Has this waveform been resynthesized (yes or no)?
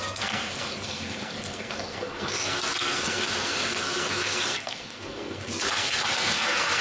yes